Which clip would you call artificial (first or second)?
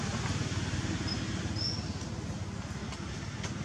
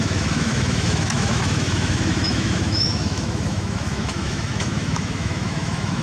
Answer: second